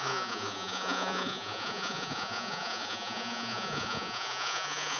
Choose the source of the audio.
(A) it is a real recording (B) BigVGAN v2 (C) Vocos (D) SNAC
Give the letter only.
C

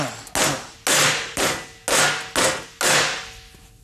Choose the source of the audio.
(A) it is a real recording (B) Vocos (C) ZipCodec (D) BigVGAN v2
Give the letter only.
A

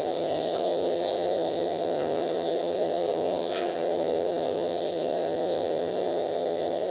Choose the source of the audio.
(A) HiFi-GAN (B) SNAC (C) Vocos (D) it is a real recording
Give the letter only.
A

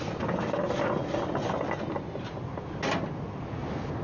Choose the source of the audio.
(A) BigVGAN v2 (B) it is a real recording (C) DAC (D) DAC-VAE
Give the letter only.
B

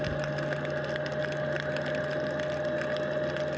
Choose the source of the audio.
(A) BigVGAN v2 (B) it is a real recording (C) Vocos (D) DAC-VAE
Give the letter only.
B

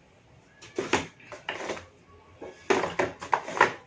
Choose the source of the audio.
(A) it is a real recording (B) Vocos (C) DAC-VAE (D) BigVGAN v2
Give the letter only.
A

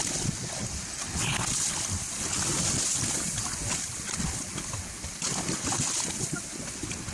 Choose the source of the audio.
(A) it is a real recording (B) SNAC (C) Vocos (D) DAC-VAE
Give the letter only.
A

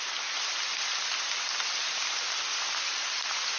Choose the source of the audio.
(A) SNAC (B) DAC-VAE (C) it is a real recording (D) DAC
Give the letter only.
C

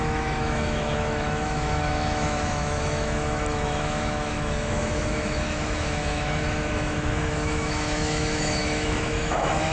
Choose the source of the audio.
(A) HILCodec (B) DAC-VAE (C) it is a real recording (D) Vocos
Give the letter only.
B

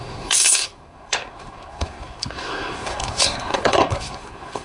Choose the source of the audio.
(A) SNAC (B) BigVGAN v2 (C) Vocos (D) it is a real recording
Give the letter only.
A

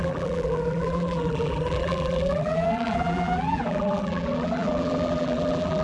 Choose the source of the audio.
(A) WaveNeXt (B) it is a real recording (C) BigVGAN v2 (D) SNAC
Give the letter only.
C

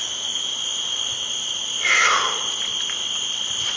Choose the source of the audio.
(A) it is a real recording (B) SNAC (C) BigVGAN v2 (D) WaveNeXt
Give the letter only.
A